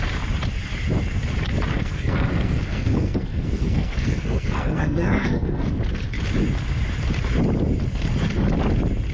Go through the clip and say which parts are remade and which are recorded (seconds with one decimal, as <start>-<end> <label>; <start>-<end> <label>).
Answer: 0.0-1.7 recorded; 1.7-5.8 remade; 5.8-9.1 recorded